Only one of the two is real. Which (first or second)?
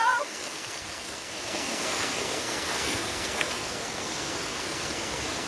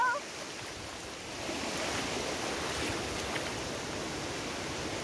second